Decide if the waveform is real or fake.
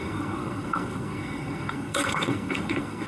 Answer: fake